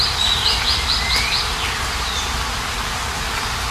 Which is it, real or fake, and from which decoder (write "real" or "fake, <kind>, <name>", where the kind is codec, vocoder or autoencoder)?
real